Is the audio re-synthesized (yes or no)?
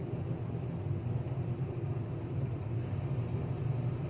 no